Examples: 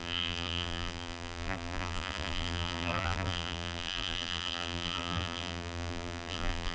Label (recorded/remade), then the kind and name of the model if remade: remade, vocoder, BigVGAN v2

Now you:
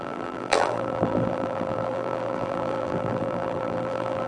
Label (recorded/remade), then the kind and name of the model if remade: remade, vocoder, BigVGAN v2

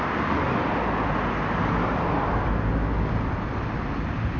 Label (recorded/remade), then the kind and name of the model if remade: recorded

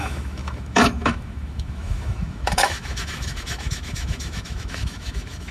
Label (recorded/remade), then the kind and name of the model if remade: remade, autoencoder, DAC-VAE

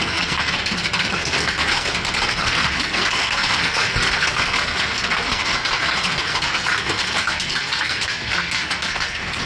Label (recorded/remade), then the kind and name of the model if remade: remade, codec, SNAC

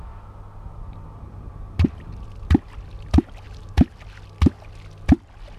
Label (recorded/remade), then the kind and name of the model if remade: recorded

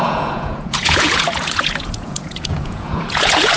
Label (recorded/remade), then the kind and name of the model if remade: remade, vocoder, Vocos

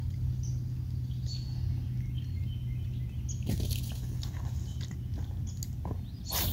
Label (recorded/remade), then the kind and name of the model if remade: recorded